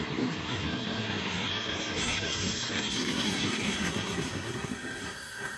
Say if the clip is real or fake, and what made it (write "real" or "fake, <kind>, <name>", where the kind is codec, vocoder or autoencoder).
fake, codec, SNAC